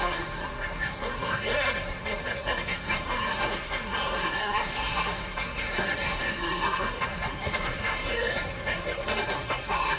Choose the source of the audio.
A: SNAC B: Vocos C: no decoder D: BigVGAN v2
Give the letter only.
A